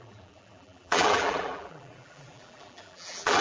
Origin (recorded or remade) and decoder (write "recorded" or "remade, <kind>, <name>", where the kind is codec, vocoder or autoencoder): remade, vocoder, BigVGAN v2